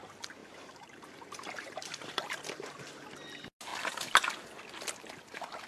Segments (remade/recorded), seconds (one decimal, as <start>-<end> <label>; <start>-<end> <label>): 0.0-0.4 recorded; 0.4-3.1 remade; 3.1-5.7 recorded